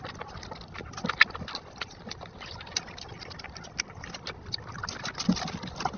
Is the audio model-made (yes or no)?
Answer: no